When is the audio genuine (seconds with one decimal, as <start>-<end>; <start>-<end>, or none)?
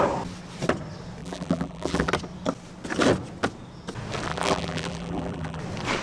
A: 0.0-1.2; 2.1-4.3; 5.6-6.0